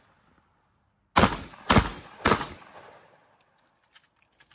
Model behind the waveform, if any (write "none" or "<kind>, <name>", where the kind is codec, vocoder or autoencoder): none